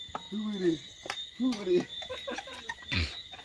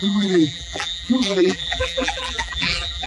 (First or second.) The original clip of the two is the first